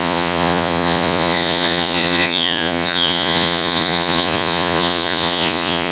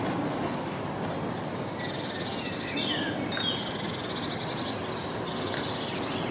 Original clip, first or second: second